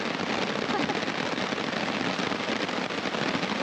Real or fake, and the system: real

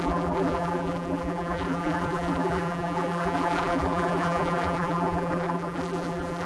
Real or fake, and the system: fake, vocoder, BigVGAN v2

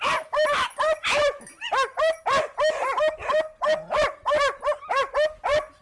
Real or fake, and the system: real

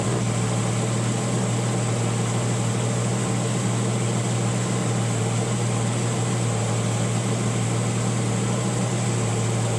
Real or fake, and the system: real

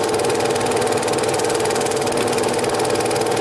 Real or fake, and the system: real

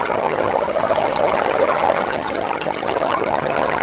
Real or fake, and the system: fake, vocoder, HiFi-GAN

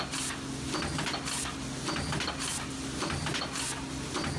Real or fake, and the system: real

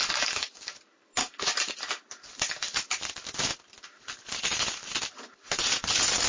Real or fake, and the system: real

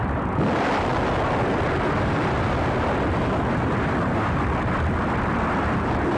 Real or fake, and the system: real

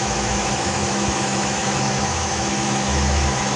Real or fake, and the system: fake, autoencoder, DAC-VAE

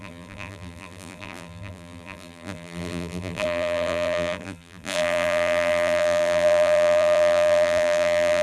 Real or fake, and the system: fake, vocoder, BigVGAN v2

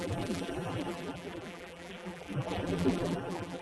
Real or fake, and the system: fake, vocoder, BigVGAN v2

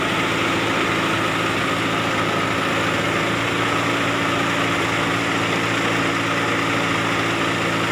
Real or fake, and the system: real